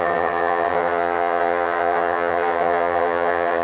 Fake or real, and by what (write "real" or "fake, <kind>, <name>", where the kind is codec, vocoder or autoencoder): fake, vocoder, HiFi-GAN